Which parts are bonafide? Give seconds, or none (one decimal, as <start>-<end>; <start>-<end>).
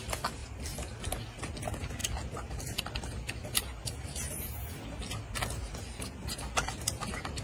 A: 0.0-7.4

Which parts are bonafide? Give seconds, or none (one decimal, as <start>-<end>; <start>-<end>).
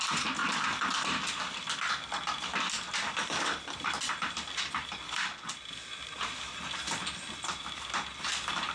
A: 0.0-8.7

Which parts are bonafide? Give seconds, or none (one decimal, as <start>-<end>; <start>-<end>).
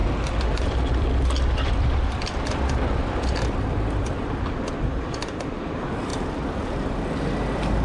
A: 4.7-6.1; 6.7-7.8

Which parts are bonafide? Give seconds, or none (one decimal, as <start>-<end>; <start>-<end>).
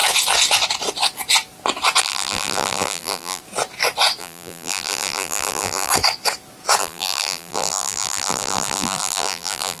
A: 0.0-2.0; 3.4-4.2; 5.9-6.8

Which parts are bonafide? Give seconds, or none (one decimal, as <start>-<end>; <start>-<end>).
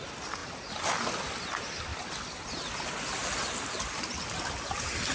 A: 0.0-1.9; 2.7-5.1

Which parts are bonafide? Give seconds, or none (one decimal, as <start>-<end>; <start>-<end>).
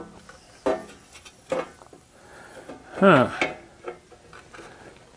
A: 0.0-0.8; 2.7-5.2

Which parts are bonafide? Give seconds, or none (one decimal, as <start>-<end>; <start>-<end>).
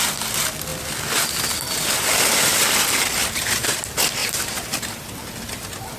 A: 0.0-3.2; 3.7-4.2; 5.1-6.0